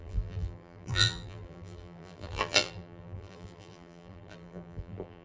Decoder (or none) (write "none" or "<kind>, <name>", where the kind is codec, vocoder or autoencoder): vocoder, BigVGAN v2